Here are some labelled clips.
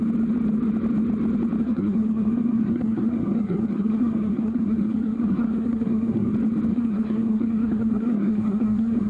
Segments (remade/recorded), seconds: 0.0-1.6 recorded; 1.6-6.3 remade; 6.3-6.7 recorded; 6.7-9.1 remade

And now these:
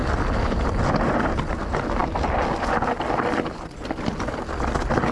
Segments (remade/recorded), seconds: 0.0-5.1 recorded

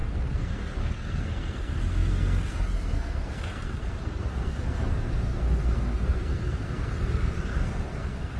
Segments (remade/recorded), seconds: 0.0-8.4 remade

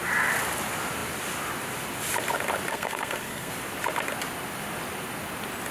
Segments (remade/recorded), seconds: 0.0-2.7 recorded; 2.7-3.5 remade; 3.5-5.7 recorded

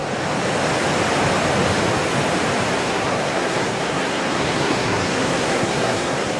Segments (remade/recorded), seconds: 0.0-2.8 recorded; 2.8-6.4 remade

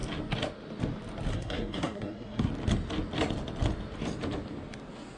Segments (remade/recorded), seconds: 0.0-1.3 recorded; 1.3-2.5 remade; 2.5-5.2 recorded

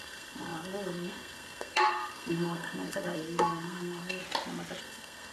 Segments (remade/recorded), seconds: 0.0-4.2 remade; 4.2-4.8 recorded; 4.8-5.3 remade

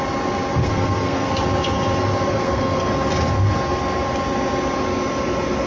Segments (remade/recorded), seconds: 0.0-0.6 recorded; 0.6-1.3 remade; 1.3-2.3 recorded; 2.3-2.9 remade; 2.9-5.7 recorded